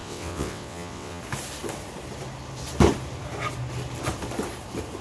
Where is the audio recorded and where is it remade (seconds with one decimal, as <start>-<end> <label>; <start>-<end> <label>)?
0.0-1.2 remade; 1.2-5.0 recorded